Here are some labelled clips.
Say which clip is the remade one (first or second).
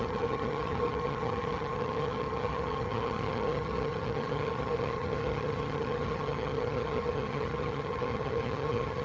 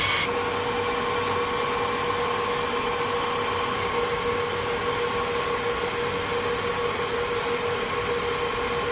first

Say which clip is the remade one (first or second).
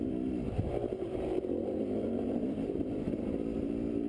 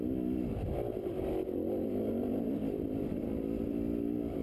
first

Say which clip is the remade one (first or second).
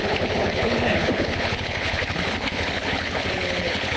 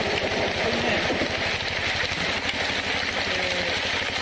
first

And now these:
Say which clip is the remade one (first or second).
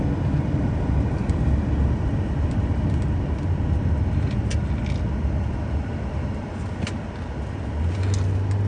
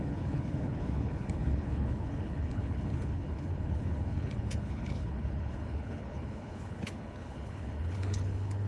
second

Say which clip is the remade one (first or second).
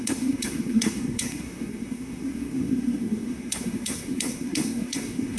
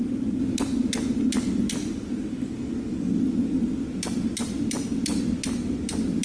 first